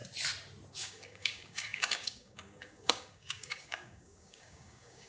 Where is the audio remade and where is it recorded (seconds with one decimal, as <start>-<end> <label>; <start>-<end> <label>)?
0.0-0.7 recorded; 0.7-5.1 remade